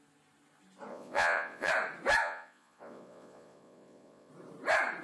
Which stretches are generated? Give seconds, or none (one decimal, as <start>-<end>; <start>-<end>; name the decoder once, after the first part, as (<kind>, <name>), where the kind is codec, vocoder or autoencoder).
0.9-1.7 (vocoder, Vocos); 2.2-4.3